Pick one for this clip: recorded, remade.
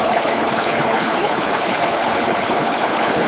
remade